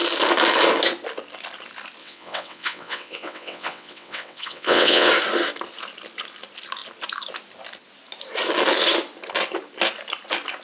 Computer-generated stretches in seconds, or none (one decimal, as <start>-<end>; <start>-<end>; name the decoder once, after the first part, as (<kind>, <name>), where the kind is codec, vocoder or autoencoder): 2.0-5.1 (vocoder, WaveNeXt)